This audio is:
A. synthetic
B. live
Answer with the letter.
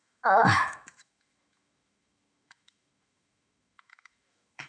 A